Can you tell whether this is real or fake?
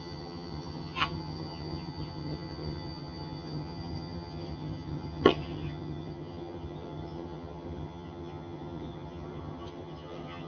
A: fake